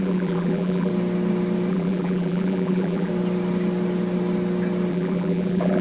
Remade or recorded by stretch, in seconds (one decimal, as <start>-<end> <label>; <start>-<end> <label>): 0.0-0.9 remade; 0.9-1.7 recorded; 1.7-3.1 remade; 3.1-4.9 recorded; 4.9-5.8 remade